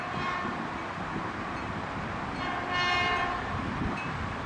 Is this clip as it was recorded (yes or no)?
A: no